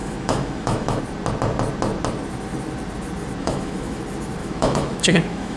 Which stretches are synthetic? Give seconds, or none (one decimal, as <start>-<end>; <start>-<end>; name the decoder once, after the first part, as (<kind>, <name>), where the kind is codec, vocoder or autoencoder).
0.0-1.0 (autoencoder, DAC-VAE); 3.4-4.0; 4.4-5.6